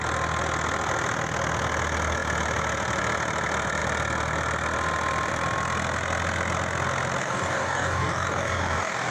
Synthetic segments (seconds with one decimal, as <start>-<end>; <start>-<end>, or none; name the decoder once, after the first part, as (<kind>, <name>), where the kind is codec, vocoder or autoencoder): 7.2-9.1 (codec, DAC)